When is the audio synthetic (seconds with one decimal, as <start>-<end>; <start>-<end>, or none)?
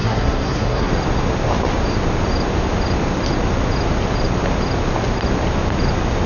0.0-0.9